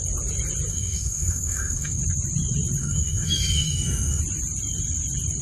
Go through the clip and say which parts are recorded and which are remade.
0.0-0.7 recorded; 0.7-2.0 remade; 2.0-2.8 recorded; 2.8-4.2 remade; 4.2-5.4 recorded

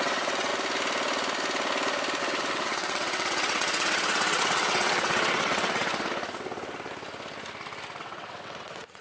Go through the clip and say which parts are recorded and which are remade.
0.0-0.5 remade; 0.5-2.2 recorded; 2.2-5.9 remade; 5.9-8.0 recorded; 8.0-9.0 remade

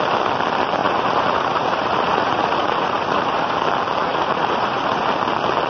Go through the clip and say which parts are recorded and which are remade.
0.0-0.8 recorded; 0.8-3.5 remade; 3.5-4.0 recorded; 4.0-5.1 remade; 5.1-5.7 recorded

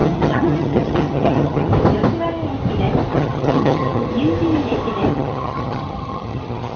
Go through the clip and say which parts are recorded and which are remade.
0.0-1.7 remade; 1.7-3.1 recorded; 3.1-4.1 remade; 4.1-5.1 recorded; 5.1-6.8 remade